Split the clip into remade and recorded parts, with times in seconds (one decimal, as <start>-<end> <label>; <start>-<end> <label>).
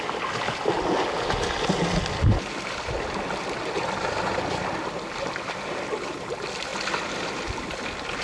0.0-8.2 recorded